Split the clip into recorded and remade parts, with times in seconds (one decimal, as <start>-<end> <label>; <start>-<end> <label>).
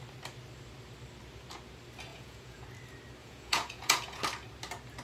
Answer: 0.0-2.1 recorded; 2.1-2.6 remade; 2.6-3.2 recorded; 3.2-4.2 remade; 4.2-5.0 recorded